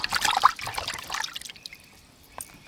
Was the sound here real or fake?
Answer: fake